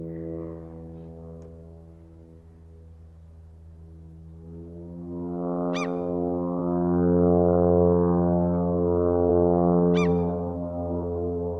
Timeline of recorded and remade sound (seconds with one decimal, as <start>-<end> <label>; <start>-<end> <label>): 0.0-10.1 recorded; 10.1-11.6 remade